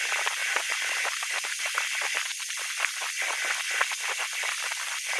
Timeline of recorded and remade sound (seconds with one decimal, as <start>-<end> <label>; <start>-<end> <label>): 0.0-0.4 recorded; 0.4-1.8 remade; 1.8-5.2 recorded